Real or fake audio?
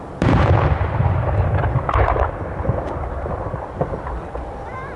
fake